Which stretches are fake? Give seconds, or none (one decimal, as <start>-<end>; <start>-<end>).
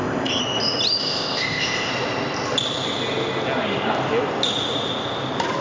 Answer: 0.0-0.4; 1.0-1.9